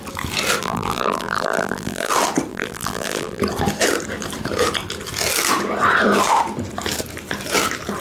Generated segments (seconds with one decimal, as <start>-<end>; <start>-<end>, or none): 0.6-2.1; 2.5-3.4